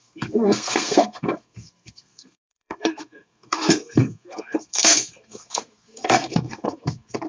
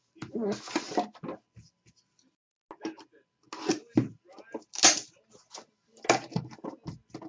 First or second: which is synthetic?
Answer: first